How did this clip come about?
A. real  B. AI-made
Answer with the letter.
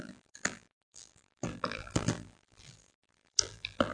B